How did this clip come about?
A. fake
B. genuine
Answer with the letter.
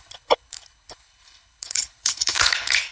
A